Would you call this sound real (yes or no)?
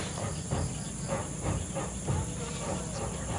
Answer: yes